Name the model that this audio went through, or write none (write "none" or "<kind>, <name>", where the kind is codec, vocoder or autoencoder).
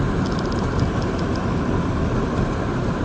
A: none